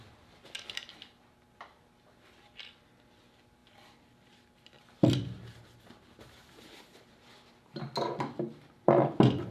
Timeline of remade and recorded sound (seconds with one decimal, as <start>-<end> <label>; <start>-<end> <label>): 0.0-3.6 recorded; 3.6-7.8 remade; 7.8-9.5 recorded